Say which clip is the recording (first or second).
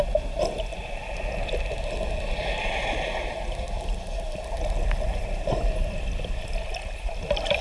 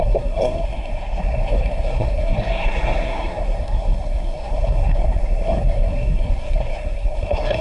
first